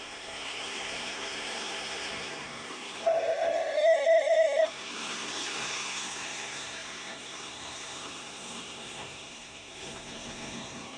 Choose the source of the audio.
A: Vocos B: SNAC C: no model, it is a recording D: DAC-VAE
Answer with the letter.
B